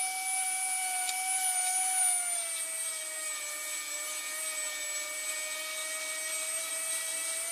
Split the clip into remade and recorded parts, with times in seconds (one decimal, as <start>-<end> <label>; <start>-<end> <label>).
0.0-7.5 recorded